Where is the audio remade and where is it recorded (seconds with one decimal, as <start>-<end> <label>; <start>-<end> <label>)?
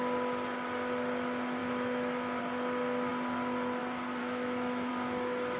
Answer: 0.0-1.6 recorded; 1.6-2.4 remade; 2.4-4.2 recorded; 4.2-4.9 remade; 4.9-5.6 recorded